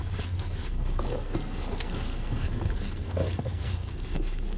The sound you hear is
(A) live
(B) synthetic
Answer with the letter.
B